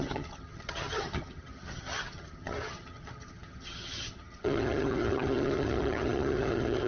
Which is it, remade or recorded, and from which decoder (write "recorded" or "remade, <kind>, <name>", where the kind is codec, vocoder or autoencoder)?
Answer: remade, vocoder, HiFi-GAN